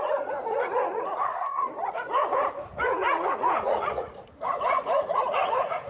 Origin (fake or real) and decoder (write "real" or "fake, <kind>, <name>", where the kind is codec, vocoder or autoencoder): fake, vocoder, Vocos